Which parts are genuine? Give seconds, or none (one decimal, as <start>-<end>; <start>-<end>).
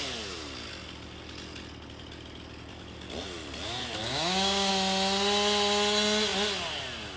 0.0-4.0; 4.7-7.2